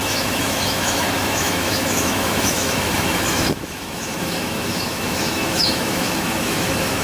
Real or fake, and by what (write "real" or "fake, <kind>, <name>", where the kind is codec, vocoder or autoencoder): fake, autoencoder, DAC-VAE